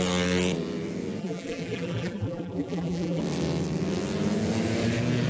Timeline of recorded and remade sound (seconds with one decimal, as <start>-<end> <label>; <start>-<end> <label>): 0.0-1.2 recorded; 1.2-3.2 remade; 3.2-5.3 recorded